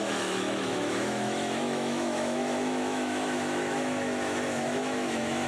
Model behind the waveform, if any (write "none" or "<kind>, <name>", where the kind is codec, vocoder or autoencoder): autoencoder, DAC-VAE